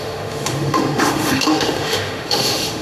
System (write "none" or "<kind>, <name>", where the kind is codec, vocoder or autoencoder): autoencoder, DAC-VAE